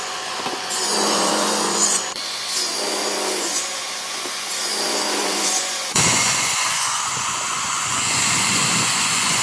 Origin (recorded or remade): remade